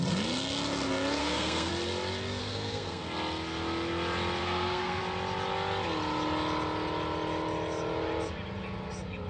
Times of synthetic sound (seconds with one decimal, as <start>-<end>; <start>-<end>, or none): 1.2-1.7; 2.4-3.0; 4.4-5.0